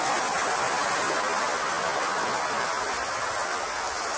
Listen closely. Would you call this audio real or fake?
real